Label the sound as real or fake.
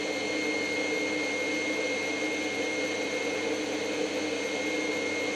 real